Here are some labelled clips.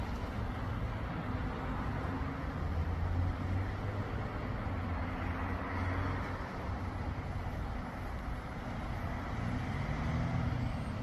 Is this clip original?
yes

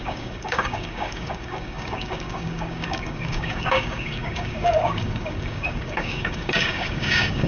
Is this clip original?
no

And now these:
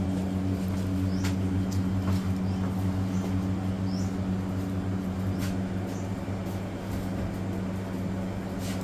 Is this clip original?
yes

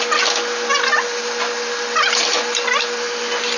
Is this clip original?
yes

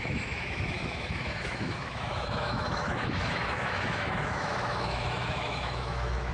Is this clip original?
no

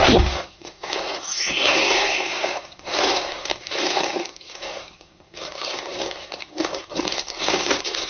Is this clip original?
no